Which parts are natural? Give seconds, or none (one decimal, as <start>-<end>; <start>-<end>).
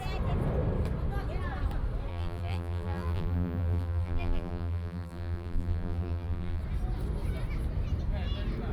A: 0.0-2.1; 6.6-8.7